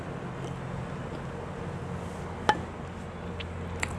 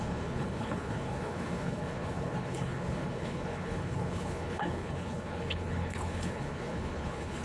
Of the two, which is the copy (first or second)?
second